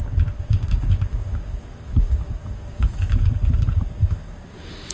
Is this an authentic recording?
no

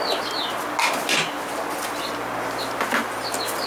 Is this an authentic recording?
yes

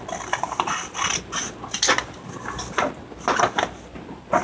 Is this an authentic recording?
yes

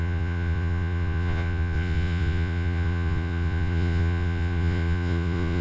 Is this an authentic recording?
no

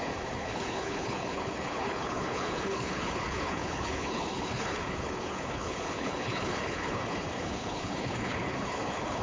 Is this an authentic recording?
no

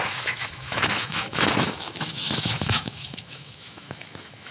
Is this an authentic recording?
no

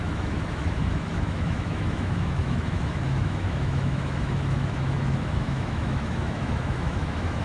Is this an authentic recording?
no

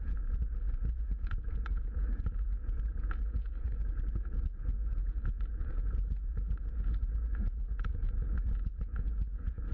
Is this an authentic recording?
no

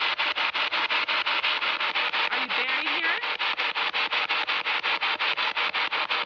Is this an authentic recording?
yes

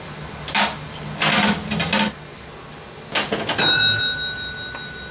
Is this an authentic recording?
yes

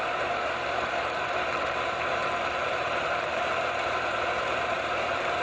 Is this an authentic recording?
no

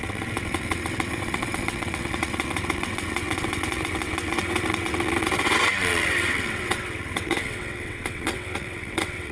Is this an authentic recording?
no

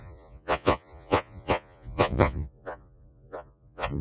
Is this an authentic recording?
no